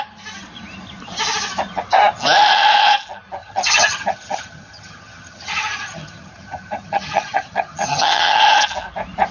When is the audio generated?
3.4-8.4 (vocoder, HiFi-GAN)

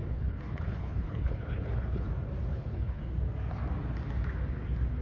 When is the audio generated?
0.0-2.1 (codec, HILCodec); 2.5-3.0

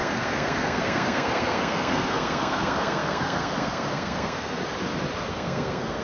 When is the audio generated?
0.0-4.6 (codec, SNAC); 5.3-6.0

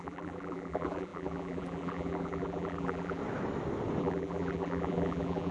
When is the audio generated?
0.0-3.2 (vocoder, BigVGAN v2); 4.0-5.5

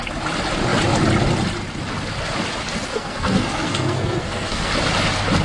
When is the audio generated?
2.9-4.7 (codec, SNAC)

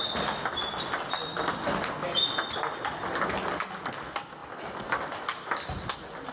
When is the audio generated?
none

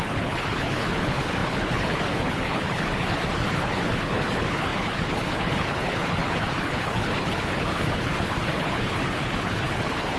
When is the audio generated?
0.0-10.2 (codec, HILCodec)

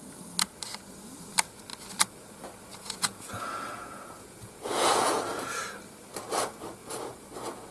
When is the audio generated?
2.7-5.6 (vocoder, Vocos); 6.8-7.7